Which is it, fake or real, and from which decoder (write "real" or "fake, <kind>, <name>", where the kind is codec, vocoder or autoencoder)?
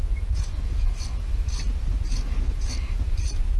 real